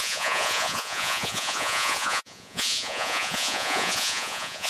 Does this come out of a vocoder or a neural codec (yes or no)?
yes